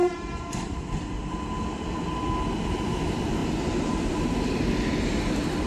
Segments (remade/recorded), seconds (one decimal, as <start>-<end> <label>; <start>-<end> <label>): 0.0-1.3 remade; 1.3-5.7 recorded